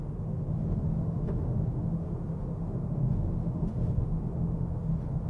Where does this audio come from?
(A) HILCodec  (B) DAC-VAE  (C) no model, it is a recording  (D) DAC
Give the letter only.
B